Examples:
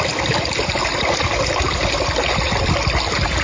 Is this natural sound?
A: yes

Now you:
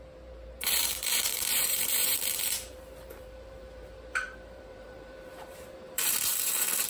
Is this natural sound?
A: no